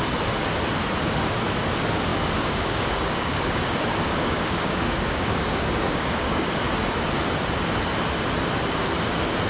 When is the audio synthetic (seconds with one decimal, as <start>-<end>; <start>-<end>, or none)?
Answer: 2.1-6.5